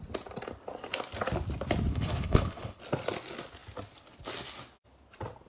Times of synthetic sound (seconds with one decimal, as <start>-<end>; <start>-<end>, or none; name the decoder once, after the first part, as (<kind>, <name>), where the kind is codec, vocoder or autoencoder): 1.9-2.8 (codec, HILCodec)